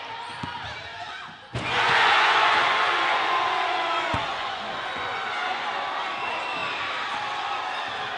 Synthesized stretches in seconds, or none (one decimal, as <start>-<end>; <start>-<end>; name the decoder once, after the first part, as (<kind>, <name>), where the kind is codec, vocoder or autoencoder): 0.9-5.7 (vocoder, Vocos)